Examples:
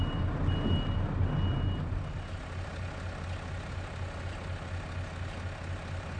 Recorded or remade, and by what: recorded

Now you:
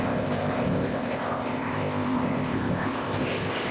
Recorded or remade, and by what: remade, codec, ZipCodec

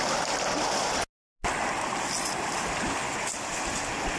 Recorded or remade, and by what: recorded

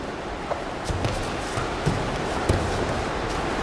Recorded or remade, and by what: recorded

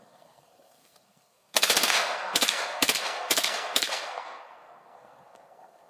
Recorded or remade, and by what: remade, codec, SNAC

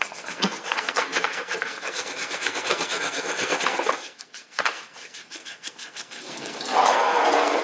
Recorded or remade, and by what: remade, codec, SNAC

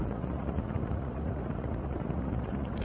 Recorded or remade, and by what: remade, vocoder, Vocos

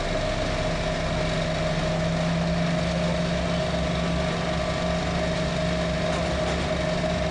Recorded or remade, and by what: recorded